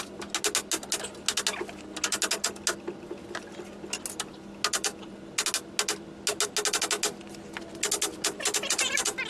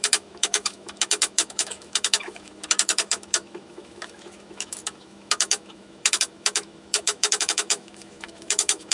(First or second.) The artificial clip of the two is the second